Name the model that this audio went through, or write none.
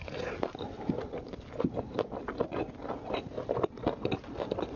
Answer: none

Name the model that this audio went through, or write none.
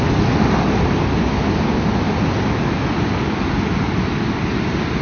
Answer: none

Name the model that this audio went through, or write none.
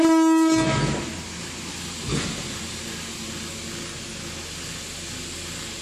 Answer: none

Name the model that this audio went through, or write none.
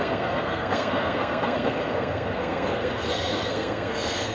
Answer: codec, SNAC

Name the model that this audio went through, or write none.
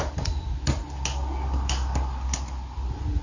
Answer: none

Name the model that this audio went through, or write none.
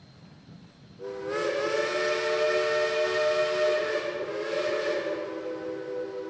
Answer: none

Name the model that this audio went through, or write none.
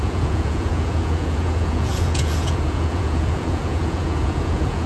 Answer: vocoder, Vocos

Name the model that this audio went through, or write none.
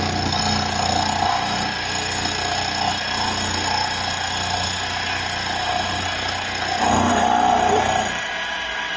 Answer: none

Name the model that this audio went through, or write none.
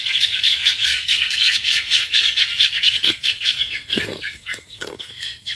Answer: codec, SNAC